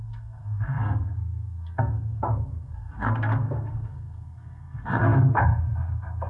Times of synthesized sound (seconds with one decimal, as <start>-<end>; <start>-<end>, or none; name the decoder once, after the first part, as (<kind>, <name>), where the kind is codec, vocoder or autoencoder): 0.0-6.3 (codec, SNAC)